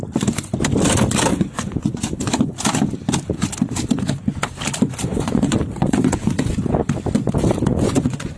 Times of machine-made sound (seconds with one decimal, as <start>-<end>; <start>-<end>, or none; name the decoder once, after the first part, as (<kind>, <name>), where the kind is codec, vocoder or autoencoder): 1.3-2.3 (vocoder, Vocos); 5.1-6.5; 7.7-8.4